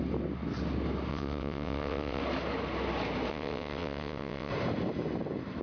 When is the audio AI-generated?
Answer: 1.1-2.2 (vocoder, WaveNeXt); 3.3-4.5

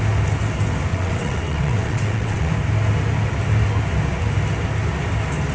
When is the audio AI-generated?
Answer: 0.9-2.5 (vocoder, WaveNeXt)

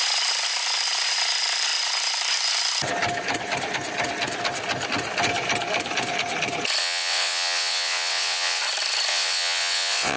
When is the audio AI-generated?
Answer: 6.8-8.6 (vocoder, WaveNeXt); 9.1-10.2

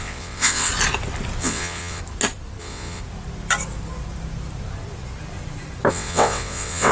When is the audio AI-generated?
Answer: 0.0-0.7 (vocoder, WaveNeXt); 1.4-2.0; 2.6-3.0; 5.9-6.9

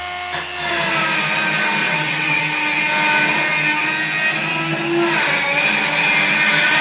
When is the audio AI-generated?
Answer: 1.8-2.4 (vocoder, WaveNeXt)